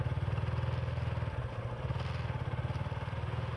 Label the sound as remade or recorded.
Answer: recorded